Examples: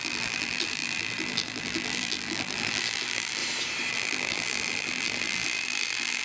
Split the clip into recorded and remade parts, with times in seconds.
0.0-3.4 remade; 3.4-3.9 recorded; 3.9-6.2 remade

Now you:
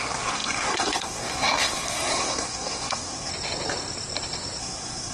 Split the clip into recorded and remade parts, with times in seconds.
0.0-3.3 remade; 3.3-4.6 recorded; 4.6-5.1 remade

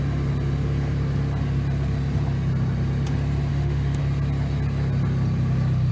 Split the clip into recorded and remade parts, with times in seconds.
0.0-3.5 recorded; 3.5-4.0 remade; 4.0-5.9 recorded

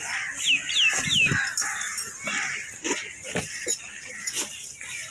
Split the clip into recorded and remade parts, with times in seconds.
0.0-5.1 recorded

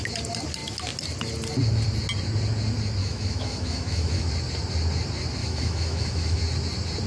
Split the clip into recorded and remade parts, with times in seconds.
0.0-3.0 recorded; 3.0-4.3 remade; 4.3-5.4 recorded; 5.4-6.4 remade; 6.4-7.1 recorded